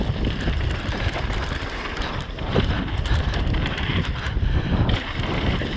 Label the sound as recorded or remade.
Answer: remade